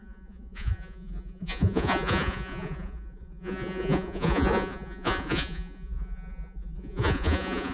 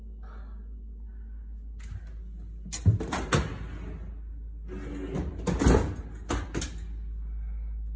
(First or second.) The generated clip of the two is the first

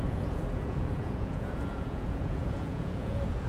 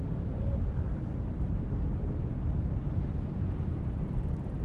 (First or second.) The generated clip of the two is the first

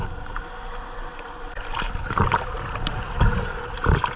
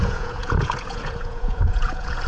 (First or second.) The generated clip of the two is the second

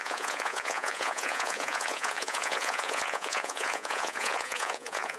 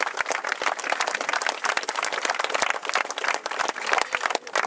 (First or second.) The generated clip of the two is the first